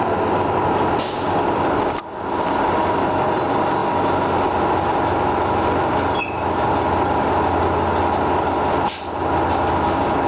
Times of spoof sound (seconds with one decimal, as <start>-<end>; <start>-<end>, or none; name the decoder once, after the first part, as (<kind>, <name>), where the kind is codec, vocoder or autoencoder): none